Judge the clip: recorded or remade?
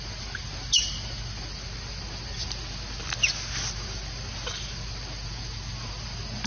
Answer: recorded